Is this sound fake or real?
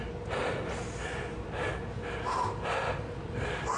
real